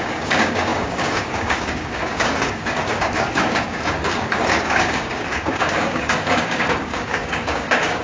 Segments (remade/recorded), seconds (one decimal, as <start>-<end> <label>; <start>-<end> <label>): 0.0-8.0 remade